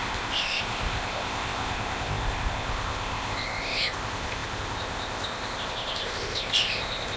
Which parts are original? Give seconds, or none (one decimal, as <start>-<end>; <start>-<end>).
none